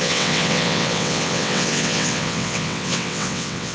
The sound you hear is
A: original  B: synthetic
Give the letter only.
B